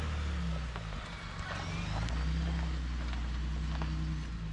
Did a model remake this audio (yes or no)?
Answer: no